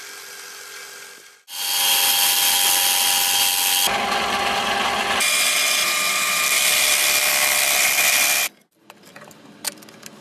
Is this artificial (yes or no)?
no